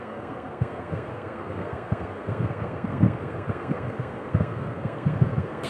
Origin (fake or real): fake